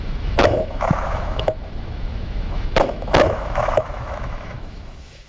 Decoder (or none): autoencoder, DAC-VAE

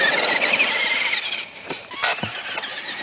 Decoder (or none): none